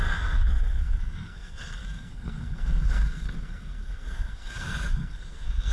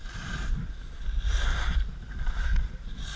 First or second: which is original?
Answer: second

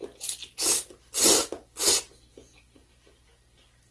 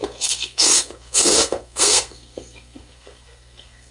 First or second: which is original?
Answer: first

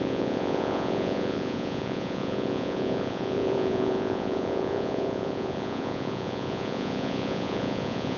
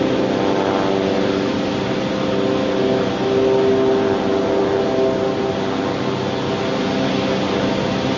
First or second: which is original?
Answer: second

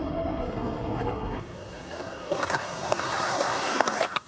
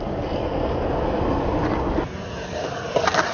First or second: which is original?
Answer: second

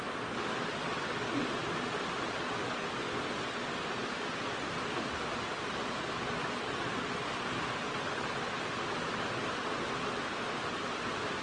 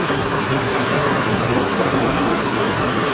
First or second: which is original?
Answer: first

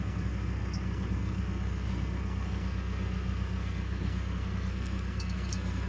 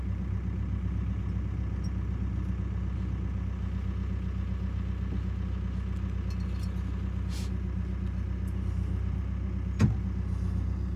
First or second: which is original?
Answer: second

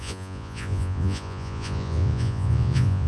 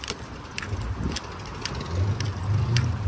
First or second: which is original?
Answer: second